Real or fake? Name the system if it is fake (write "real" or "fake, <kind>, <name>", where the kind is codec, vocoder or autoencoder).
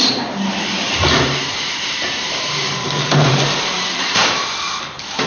fake, vocoder, BigVGAN v2